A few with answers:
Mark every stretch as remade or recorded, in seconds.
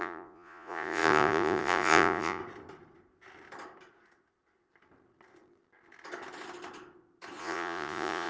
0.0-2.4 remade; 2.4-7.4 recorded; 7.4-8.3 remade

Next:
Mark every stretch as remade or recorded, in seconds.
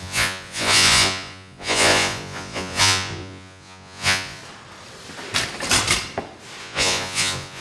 0.0-4.4 remade; 4.4-6.6 recorded; 6.6-7.6 remade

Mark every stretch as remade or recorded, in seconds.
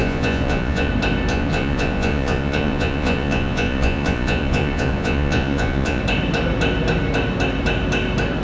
0.0-0.9 remade; 0.9-1.3 recorded; 1.3-6.0 remade; 6.0-8.4 recorded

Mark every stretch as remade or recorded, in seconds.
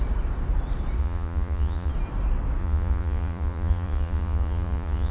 0.0-1.0 recorded; 1.0-1.9 remade; 1.9-2.6 recorded; 2.6-5.1 remade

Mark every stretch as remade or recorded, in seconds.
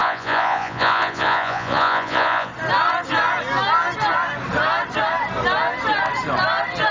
0.0-2.5 remade; 2.5-6.9 recorded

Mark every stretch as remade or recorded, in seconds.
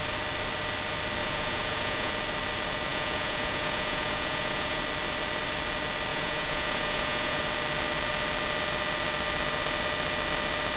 0.0-1.2 recorded; 1.2-2.1 remade; 2.1-2.9 recorded; 2.9-4.8 remade; 4.8-6.1 recorded; 6.1-7.4 remade; 7.4-10.8 recorded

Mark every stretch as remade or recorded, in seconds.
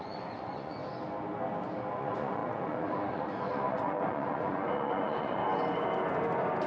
0.0-0.8 remade; 0.8-1.9 recorded; 1.9-5.4 remade; 5.4-6.7 recorded